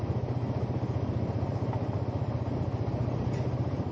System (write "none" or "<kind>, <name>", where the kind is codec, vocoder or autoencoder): none